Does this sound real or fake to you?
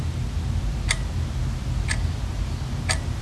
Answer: real